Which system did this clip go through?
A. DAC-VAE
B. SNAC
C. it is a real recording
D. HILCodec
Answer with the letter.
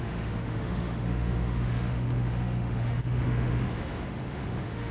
A